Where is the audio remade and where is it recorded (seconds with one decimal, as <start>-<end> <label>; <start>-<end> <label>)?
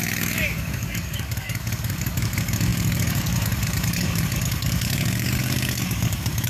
0.0-6.5 remade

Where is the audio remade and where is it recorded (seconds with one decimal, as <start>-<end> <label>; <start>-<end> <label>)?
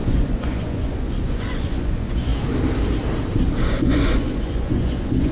0.0-2.3 remade; 2.3-3.8 recorded; 3.8-5.3 remade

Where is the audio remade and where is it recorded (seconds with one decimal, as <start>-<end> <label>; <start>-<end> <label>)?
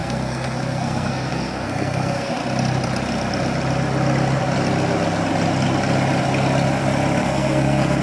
0.0-2.4 remade; 2.4-7.2 recorded; 7.2-8.0 remade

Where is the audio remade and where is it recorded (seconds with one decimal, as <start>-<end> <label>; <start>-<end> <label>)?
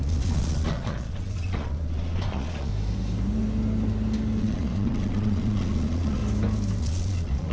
0.0-2.7 remade; 2.7-4.4 recorded; 4.4-6.2 remade; 6.2-6.8 recorded; 6.8-7.5 remade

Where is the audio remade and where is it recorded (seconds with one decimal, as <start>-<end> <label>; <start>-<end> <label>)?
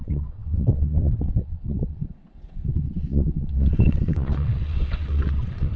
0.0-5.8 remade